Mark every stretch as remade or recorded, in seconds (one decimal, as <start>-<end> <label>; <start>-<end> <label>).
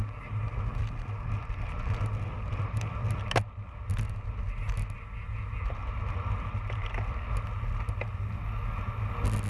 0.0-9.5 recorded